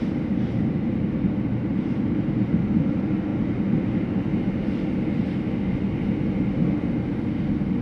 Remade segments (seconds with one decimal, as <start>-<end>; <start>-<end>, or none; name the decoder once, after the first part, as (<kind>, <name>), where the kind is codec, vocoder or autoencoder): 1.7-2.3 (vocoder, BigVGAN v2)